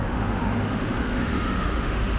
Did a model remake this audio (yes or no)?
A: yes